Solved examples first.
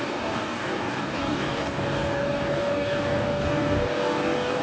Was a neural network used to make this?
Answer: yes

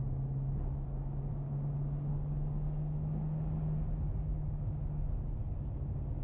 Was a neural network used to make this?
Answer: no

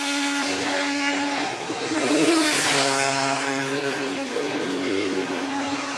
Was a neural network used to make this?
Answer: yes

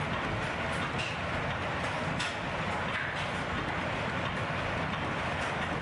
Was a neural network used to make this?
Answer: no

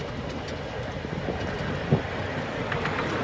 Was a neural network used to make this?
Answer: no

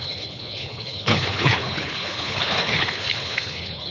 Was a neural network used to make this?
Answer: yes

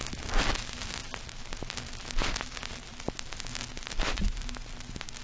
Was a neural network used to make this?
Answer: no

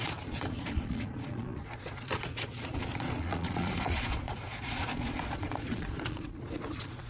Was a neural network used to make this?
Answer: yes